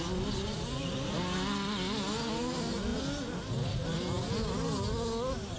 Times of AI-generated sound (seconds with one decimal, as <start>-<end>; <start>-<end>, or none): none